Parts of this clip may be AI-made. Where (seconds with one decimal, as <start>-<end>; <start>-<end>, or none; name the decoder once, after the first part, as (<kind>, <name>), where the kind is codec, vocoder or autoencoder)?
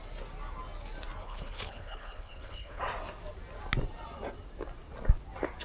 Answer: 1.2-2.8 (codec, HILCodec)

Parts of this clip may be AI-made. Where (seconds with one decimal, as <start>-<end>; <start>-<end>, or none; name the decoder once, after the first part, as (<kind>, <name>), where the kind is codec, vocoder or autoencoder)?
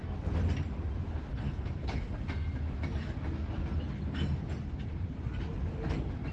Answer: 1.3-2.1 (codec, HILCodec)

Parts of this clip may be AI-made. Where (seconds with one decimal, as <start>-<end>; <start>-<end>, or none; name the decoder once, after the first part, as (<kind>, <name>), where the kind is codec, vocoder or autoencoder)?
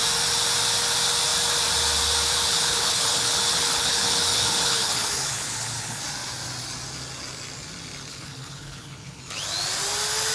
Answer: 2.4-6.0 (codec, HILCodec); 8.1-9.2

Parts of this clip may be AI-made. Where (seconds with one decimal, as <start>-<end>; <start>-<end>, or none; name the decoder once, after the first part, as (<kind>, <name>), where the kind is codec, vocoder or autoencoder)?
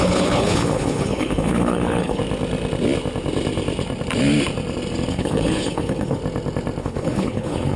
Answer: 0.0-2.2 (codec, HILCodec); 5.1-6.2; 6.8-7.8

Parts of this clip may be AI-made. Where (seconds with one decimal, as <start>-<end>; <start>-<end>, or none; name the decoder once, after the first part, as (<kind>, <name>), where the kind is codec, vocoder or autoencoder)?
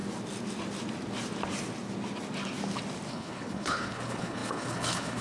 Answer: 3.1-5.2 (codec, HILCodec)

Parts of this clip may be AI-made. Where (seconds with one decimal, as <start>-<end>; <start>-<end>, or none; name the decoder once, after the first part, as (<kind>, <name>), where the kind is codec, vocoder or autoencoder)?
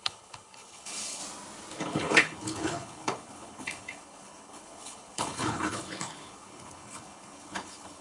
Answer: 0.0-1.2 (codec, HILCodec); 1.8-8.0